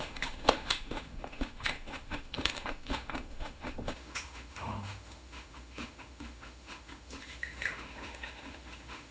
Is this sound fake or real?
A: fake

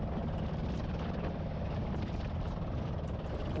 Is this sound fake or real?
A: real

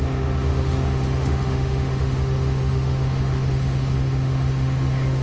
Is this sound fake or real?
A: fake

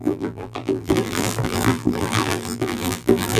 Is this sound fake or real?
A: fake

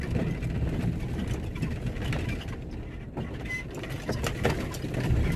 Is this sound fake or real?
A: real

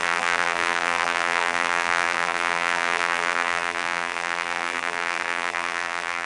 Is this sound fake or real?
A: fake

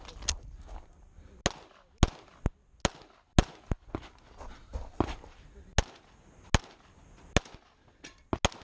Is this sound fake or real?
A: real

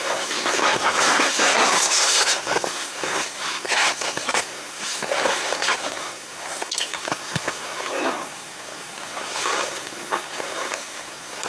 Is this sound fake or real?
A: fake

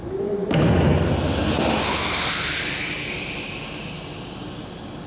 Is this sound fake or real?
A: real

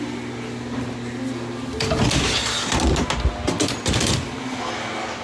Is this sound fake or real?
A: real